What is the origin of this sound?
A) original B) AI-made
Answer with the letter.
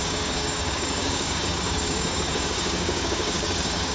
B